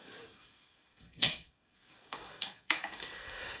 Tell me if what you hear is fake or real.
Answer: fake